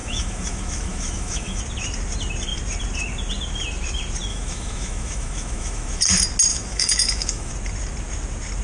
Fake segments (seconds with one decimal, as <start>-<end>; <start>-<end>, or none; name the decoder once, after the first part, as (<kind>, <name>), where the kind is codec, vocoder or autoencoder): 0.0-1.6 (autoencoder, DAC-VAE); 4.3-6.0; 6.5-7.5